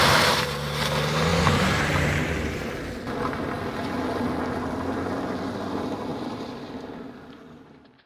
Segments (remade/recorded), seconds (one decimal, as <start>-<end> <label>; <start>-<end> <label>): 0.0-8.1 recorded